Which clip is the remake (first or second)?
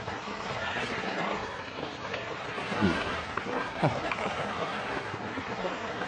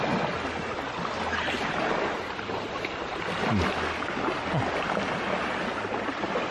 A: first